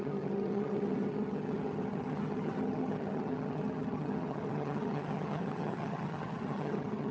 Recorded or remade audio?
remade